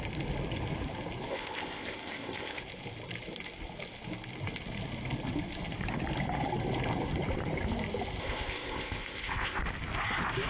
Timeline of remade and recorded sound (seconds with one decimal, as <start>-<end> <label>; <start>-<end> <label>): 0.0-1.3 recorded; 1.3-2.6 remade; 2.6-8.2 recorded; 8.2-9.6 remade; 9.6-10.5 recorded